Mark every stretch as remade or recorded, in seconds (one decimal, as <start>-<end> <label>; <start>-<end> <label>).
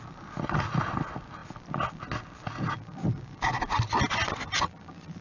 0.0-5.2 recorded